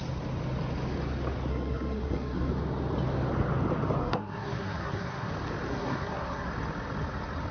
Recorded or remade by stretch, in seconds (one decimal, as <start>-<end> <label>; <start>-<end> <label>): 0.0-1.5 recorded; 1.5-2.5 remade; 2.5-4.0 recorded; 4.0-5.3 remade; 5.3-5.7 recorded; 5.7-6.5 remade; 6.5-7.5 recorded